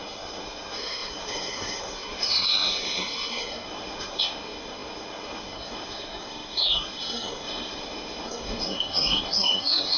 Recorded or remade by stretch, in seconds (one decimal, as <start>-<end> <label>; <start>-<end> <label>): 0.0-10.0 remade

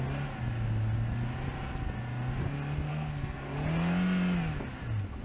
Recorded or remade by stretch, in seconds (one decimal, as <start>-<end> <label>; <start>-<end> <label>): 0.0-2.9 recorded; 2.9-3.5 remade; 3.5-5.2 recorded

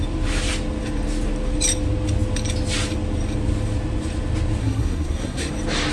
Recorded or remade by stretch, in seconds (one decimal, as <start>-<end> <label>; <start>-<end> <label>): 0.0-4.6 recorded; 4.6-5.5 remade; 5.5-5.9 recorded

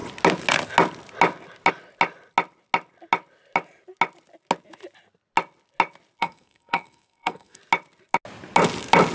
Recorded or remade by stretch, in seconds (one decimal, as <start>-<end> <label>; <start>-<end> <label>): 0.0-6.2 recorded; 6.2-7.6 remade; 7.6-9.1 recorded